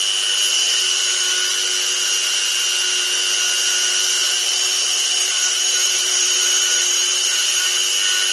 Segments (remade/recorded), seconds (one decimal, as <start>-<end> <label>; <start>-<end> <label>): 0.0-0.5 recorded; 0.5-1.0 remade; 1.0-4.2 recorded; 4.2-7.8 remade; 7.8-8.3 recorded